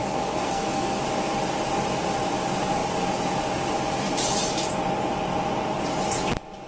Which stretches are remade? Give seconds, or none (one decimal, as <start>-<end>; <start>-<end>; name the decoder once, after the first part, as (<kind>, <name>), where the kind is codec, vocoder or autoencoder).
0.0-1.0 (codec, SNAC)